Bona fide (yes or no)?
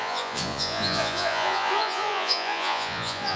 no